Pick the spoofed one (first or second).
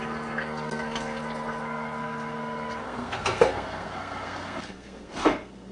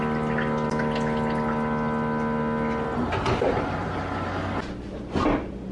first